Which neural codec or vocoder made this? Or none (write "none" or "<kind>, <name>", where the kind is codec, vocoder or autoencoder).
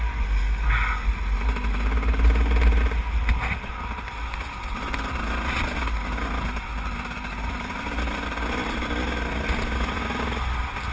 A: none